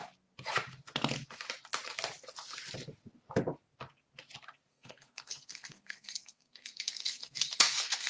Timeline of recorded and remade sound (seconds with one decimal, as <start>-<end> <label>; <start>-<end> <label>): 0.0-4.7 recorded; 4.7-8.1 remade